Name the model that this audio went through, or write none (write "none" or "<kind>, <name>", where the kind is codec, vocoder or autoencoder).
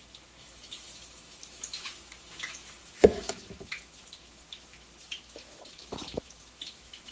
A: autoencoder, DAC-VAE